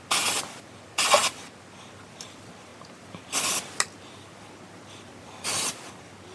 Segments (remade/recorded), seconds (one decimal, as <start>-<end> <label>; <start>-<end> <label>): 0.0-6.3 recorded